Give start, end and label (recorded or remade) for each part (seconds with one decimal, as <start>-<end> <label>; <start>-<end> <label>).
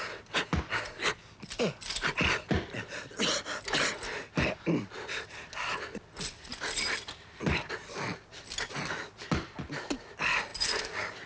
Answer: 0.0-11.3 recorded